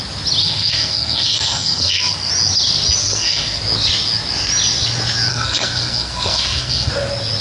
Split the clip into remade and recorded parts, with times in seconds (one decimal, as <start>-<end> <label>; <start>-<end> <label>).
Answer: 0.0-0.4 recorded; 0.4-2.3 remade; 2.3-3.0 recorded; 3.0-3.6 remade; 3.6-5.3 recorded; 5.3-6.9 remade; 6.9-7.4 recorded